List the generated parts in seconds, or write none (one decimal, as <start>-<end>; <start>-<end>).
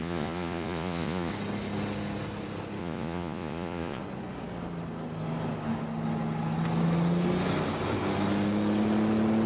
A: 0.0-1.3; 2.8-4.0